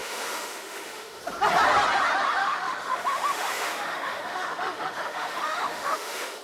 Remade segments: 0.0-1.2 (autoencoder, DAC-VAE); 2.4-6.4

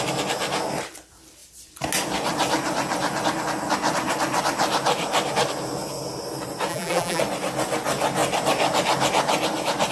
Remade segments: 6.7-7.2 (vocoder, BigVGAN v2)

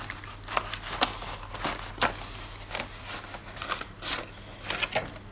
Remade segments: none